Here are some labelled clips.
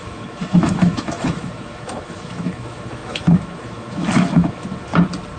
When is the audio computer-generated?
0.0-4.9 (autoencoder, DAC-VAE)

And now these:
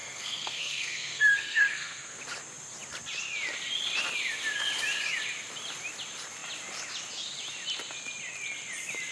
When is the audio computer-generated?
0.0-2.2 (codec, SNAC)